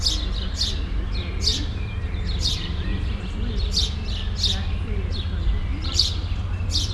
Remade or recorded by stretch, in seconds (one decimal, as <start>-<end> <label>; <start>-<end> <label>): 0.0-1.5 recorded; 1.5-3.2 remade; 3.2-5.7 recorded; 5.7-6.9 remade